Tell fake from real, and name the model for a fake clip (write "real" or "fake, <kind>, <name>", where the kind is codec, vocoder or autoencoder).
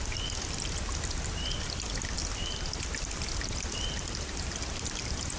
real